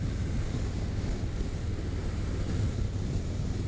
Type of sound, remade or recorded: recorded